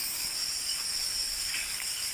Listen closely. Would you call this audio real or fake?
fake